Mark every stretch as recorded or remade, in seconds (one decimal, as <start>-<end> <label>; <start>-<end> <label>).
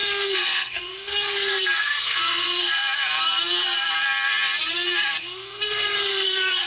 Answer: 0.0-2.8 remade; 2.8-5.2 recorded; 5.2-6.7 remade